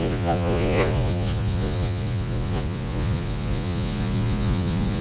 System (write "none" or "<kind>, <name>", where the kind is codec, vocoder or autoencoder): vocoder, Vocos